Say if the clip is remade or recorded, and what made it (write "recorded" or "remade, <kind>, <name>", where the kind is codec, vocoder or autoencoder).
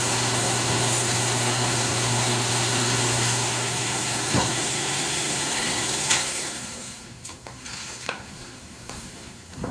remade, codec, SNAC